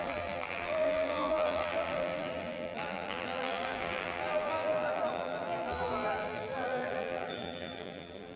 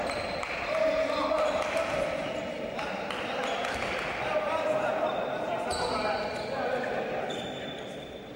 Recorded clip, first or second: second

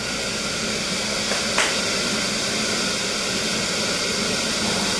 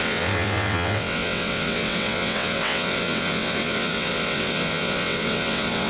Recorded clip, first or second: first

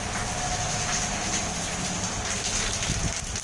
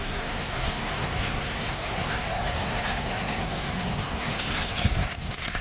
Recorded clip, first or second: first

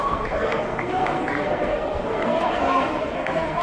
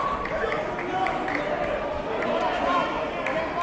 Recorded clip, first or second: second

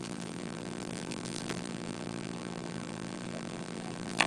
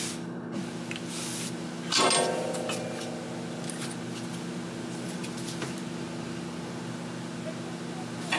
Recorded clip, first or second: second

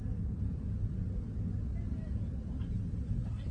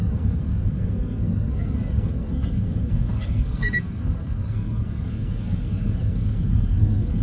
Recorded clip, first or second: first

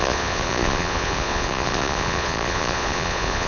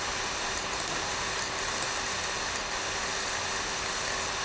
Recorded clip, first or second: second